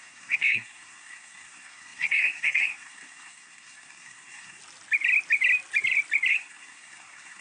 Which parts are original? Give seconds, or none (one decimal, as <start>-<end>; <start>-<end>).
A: 4.6-6.3